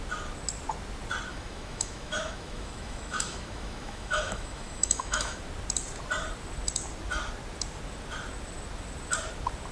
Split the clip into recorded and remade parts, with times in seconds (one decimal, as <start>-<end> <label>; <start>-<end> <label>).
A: 0.0-1.3 recorded; 1.3-5.4 remade; 5.4-9.7 recorded